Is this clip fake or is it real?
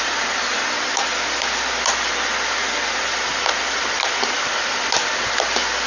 real